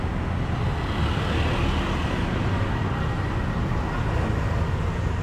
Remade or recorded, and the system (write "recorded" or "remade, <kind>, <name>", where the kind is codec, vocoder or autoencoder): recorded